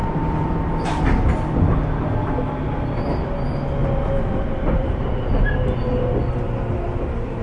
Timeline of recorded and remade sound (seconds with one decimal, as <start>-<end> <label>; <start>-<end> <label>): 0.0-1.0 remade; 1.0-3.8 recorded; 3.8-5.4 remade; 5.4-7.4 recorded